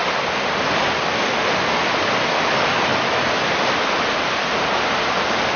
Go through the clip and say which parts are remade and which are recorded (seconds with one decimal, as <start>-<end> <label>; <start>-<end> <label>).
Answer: 0.0-5.6 recorded